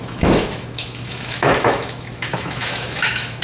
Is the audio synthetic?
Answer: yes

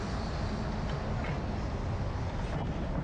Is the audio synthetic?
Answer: no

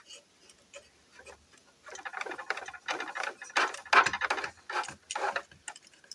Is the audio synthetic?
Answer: no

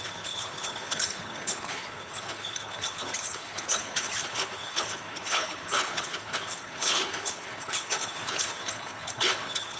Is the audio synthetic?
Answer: yes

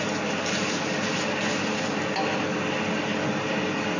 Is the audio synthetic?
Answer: no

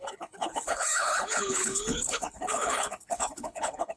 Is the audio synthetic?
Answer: yes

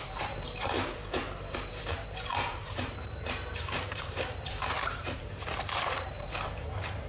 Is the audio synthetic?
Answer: yes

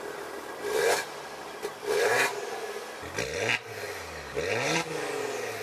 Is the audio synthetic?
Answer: no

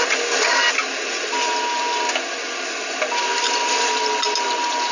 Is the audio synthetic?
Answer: no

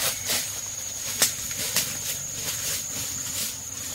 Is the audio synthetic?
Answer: no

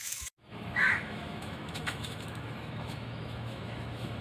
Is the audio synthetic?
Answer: yes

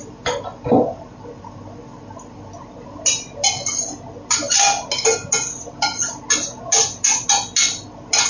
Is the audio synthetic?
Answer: no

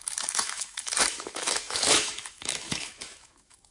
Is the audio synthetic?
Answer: yes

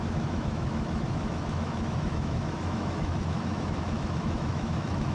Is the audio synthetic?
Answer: yes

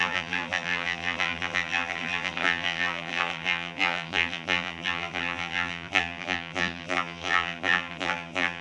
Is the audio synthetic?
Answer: yes